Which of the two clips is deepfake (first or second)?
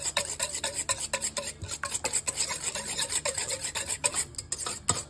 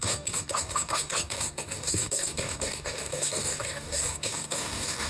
second